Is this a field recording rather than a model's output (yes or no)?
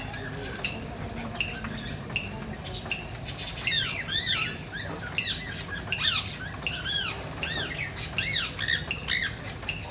yes